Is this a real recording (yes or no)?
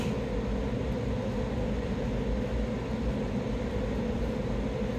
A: yes